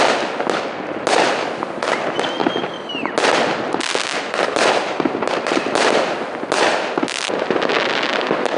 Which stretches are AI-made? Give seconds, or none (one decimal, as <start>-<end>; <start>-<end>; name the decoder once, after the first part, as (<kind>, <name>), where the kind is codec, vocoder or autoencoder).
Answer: none